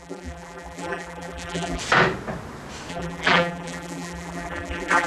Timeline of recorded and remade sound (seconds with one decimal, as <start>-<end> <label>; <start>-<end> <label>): 0.0-1.8 remade; 1.8-2.9 recorded; 2.9-5.1 remade